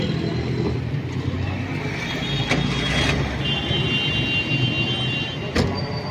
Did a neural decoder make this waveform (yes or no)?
no